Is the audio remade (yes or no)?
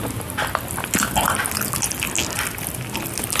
no